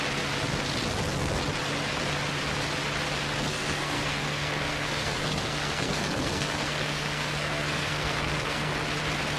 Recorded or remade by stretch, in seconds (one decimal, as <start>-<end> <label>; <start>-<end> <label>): 0.0-3.5 recorded; 3.5-8.7 remade; 8.7-9.4 recorded